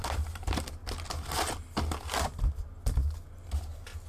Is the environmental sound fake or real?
real